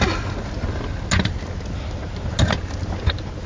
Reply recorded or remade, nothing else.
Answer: recorded